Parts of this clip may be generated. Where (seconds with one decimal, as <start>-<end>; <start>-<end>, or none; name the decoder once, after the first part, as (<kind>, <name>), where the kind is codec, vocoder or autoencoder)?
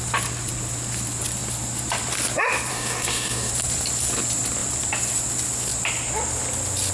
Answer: 2.7-3.5 (codec, DAC)